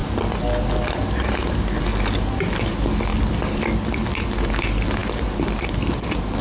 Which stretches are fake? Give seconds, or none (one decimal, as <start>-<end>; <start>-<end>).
none